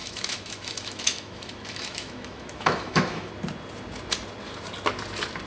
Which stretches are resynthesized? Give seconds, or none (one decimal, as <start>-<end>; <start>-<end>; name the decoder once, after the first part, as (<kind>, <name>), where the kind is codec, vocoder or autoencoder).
0.0-3.3 (autoencoder, DAC-VAE)